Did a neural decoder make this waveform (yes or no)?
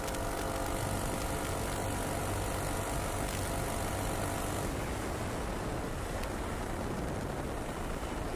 no